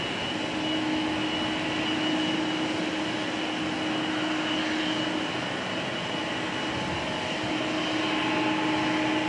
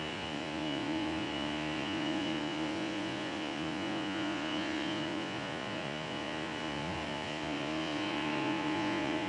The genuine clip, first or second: first